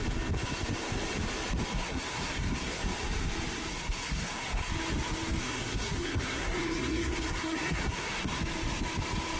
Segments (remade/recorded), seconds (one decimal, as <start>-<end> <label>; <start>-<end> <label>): 0.0-1.7 recorded; 1.7-2.8 remade; 2.8-3.7 recorded; 3.7-4.7 remade; 4.7-5.4 recorded; 5.4-8.4 remade; 8.4-9.4 recorded